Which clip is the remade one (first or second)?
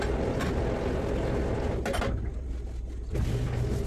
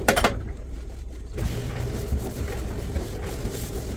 second